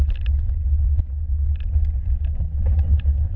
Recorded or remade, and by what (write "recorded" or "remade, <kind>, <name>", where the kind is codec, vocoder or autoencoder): recorded